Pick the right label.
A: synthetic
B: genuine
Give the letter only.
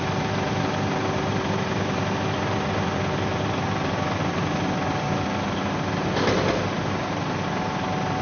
B